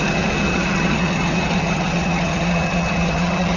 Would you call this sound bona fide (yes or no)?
no